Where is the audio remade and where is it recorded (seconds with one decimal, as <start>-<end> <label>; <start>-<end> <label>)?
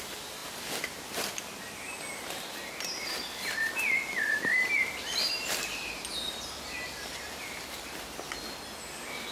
0.0-9.3 recorded